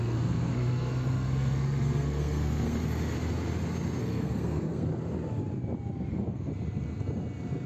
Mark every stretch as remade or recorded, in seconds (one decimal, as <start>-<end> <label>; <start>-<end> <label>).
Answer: 0.0-2.8 remade; 2.8-4.0 recorded; 4.0-4.9 remade; 4.9-6.1 recorded; 6.1-6.5 remade; 6.5-7.7 recorded